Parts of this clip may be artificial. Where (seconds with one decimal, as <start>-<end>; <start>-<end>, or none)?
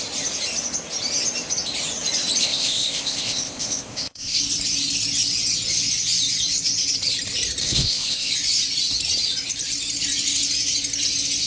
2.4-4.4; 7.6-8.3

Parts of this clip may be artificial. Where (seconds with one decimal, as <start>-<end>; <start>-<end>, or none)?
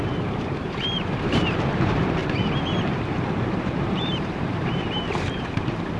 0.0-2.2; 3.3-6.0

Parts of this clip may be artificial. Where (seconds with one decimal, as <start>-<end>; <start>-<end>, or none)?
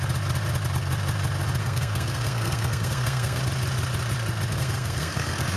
1.6-3.4; 4.6-5.6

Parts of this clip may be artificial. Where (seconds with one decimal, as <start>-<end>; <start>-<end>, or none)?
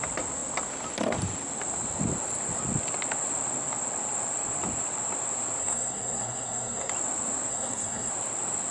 5.6-6.9; 7.5-8.1